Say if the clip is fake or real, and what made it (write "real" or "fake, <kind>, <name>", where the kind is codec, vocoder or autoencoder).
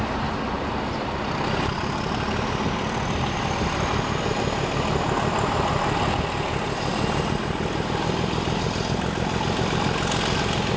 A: real